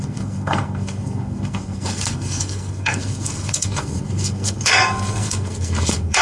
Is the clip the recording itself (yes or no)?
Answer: no